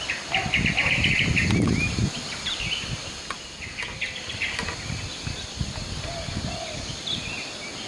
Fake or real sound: real